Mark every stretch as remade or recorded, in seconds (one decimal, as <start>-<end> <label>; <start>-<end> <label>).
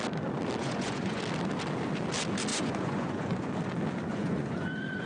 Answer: 0.0-0.6 recorded; 0.6-1.2 remade; 1.2-2.5 recorded; 2.5-3.5 remade; 3.5-4.1 recorded; 4.1-5.1 remade